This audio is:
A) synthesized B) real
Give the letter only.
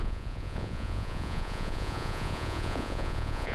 A